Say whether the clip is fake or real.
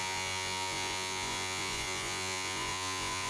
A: fake